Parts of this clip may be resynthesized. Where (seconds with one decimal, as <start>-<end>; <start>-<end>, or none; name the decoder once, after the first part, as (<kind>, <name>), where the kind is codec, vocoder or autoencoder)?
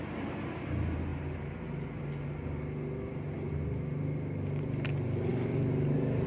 none